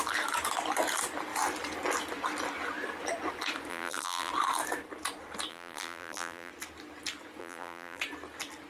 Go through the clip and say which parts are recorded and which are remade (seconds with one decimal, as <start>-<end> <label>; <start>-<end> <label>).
0.0-3.7 recorded; 3.7-4.3 remade; 4.3-5.5 recorded; 5.5-6.5 remade; 6.5-7.4 recorded; 7.4-8.0 remade; 8.0-8.7 recorded

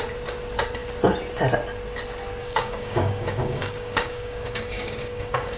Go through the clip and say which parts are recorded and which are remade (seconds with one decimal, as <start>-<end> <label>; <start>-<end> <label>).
0.0-2.4 recorded; 2.4-5.6 remade

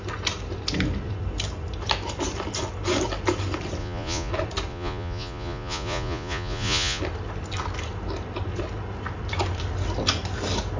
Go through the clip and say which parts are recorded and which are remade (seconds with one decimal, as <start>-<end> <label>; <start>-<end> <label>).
0.0-3.8 recorded; 3.8-4.3 remade; 4.3-4.7 recorded; 4.7-7.0 remade; 7.0-10.8 recorded

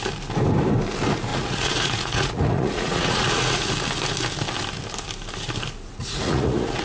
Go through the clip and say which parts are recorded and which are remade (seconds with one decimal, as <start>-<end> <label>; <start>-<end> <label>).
0.0-1.3 recorded; 1.3-3.7 remade; 3.7-6.0 recorded; 6.0-6.8 remade

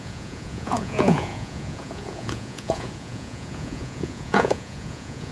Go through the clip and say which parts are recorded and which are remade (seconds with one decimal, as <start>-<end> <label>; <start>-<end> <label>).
0.0-5.3 remade